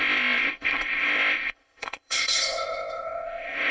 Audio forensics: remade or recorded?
remade